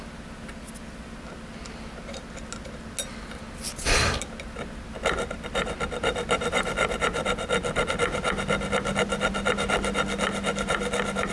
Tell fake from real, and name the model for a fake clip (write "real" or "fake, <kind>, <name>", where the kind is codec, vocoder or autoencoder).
real